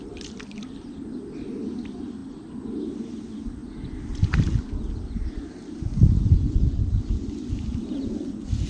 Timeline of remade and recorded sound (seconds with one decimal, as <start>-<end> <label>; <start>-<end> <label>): 0.0-8.7 recorded